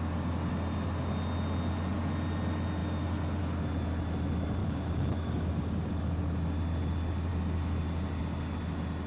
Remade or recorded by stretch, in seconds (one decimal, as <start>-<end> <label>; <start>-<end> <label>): 0.0-4.6 recorded; 4.6-5.9 remade; 5.9-9.1 recorded